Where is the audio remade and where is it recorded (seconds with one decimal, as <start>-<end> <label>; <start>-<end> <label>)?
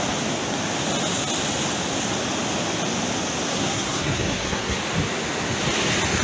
0.0-3.5 recorded; 3.5-4.8 remade; 4.8-6.2 recorded